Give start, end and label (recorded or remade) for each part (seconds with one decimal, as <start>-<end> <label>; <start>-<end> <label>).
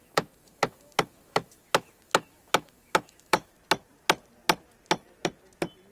0.0-3.5 remade; 3.5-5.9 recorded